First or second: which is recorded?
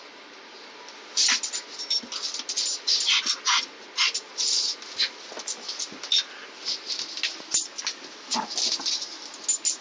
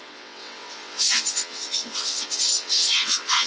first